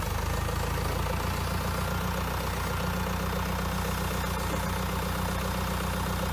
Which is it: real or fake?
real